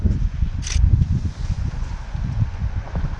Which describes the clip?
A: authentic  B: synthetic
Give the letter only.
B